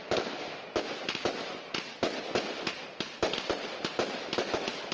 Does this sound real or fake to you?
real